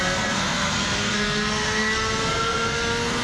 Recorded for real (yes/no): no